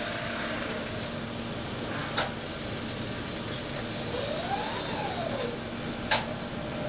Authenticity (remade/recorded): recorded